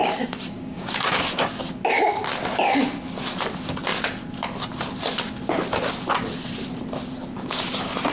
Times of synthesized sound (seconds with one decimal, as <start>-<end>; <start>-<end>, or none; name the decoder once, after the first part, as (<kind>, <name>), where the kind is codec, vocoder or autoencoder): 0.0-1.8 (codec, DAC)